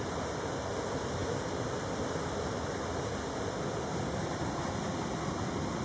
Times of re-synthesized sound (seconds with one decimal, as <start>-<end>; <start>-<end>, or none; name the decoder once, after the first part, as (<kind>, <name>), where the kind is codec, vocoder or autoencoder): none